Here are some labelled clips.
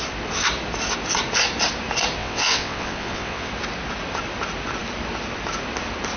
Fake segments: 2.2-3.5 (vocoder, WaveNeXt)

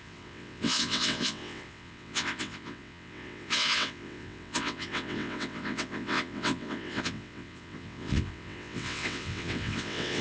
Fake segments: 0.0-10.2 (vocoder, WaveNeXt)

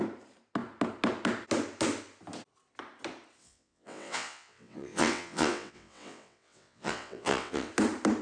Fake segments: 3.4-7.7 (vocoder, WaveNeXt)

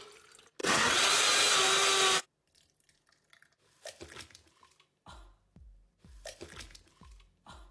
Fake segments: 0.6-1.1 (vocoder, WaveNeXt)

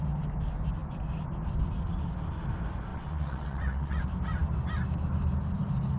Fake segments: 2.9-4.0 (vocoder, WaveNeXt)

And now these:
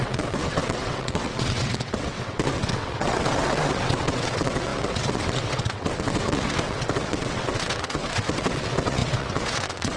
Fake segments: 0.0-10.0 (vocoder, WaveNeXt)

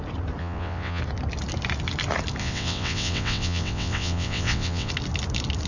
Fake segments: 0.4-1.0 (vocoder, WaveNeXt); 2.4-4.9